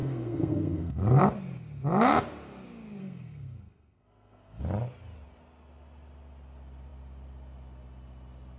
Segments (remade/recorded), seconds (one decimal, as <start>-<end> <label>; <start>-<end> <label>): 0.0-1.2 remade; 1.2-3.0 recorded; 3.0-4.6 remade; 4.6-8.6 recorded